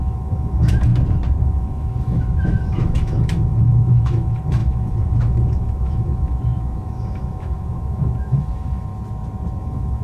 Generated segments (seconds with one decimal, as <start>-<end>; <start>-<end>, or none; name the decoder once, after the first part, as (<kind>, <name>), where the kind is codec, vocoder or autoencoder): 0.0-0.9 (autoencoder, DAC-VAE); 1.4-8.9; 9.6-10.0